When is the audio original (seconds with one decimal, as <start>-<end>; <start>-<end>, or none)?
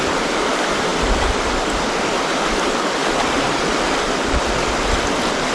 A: 0.0-5.5